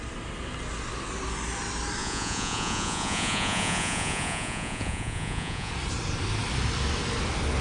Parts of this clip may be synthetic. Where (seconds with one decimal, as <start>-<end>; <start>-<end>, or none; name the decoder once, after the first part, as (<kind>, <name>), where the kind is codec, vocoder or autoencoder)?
2.0-5.7 (vocoder, Vocos)